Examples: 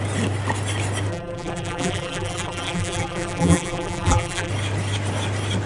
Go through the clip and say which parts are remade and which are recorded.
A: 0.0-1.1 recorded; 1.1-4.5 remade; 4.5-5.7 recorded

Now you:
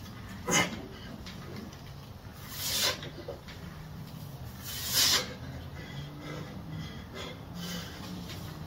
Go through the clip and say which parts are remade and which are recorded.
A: 0.0-8.7 recorded

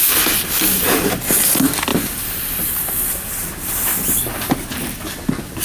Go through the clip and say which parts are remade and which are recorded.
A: 0.0-5.6 recorded

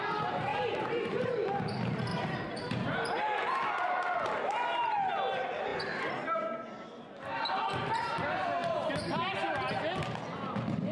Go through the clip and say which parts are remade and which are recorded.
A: 0.0-0.5 recorded; 0.5-1.3 remade; 1.3-2.1 recorded; 2.1-3.7 remade; 3.7-8.6 recorded; 8.6-9.3 remade; 9.3-10.9 recorded